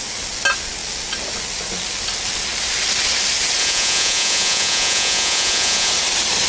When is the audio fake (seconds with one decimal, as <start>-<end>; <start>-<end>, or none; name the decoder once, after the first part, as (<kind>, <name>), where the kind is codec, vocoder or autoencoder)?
3.6-5.9 (vocoder, Vocos)